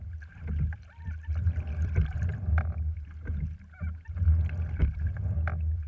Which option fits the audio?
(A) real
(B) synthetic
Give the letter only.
A